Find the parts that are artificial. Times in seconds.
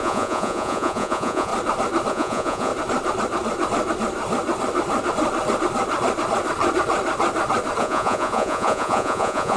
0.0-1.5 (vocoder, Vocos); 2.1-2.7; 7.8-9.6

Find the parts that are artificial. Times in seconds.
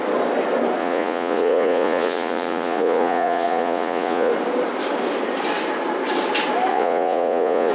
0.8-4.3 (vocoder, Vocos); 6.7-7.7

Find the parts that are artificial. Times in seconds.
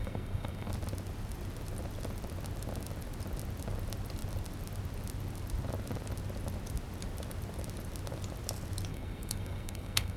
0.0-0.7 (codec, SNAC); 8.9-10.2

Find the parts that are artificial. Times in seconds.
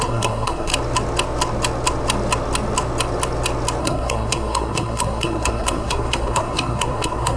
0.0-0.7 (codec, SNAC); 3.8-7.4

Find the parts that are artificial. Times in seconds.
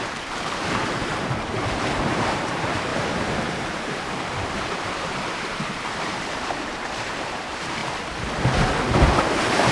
0.0-7.8 (vocoder, BigVGAN v2); 9.2-9.7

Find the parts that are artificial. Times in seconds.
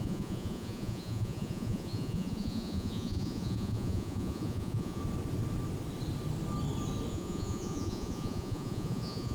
0.0-5.0 (vocoder, Vocos); 7.1-9.3